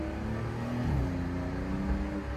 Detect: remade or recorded recorded